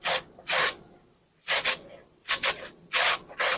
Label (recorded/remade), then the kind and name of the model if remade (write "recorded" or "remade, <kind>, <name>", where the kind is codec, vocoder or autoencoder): recorded